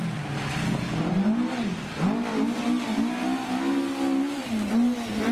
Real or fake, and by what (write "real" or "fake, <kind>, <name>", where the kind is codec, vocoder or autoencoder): real